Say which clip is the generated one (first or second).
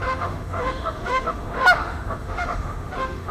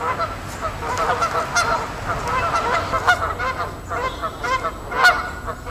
first